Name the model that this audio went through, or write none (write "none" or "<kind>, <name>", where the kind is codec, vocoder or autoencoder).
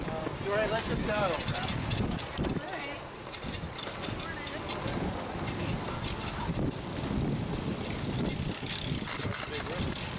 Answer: none